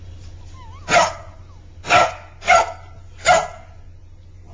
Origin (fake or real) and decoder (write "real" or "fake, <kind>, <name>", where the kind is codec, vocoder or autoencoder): real